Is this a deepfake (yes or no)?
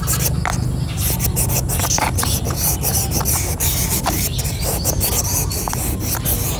no